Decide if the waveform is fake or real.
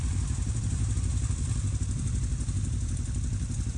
real